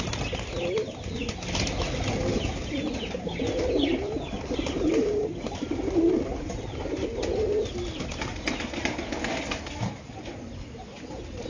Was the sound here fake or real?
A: real